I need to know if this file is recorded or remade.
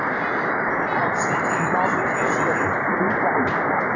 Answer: recorded